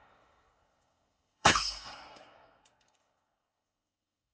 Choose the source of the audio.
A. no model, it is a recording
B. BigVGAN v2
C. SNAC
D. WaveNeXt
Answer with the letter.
C